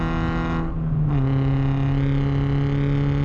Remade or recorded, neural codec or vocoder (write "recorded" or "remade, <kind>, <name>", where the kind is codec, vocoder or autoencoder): recorded